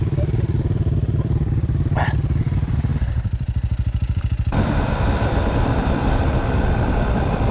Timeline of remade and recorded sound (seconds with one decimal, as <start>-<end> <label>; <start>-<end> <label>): 0.0-7.5 remade